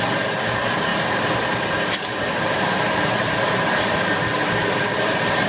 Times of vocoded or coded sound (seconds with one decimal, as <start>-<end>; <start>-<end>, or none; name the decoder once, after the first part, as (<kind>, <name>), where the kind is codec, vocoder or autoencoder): none